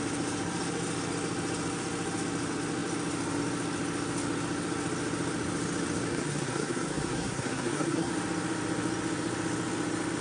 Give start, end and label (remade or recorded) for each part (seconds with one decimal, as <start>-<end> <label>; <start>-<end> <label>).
0.0-6.1 recorded; 6.1-8.1 remade; 8.1-10.2 recorded